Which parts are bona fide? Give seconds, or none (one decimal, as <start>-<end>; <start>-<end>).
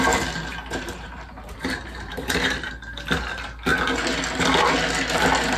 0.0-0.5; 2.7-5.6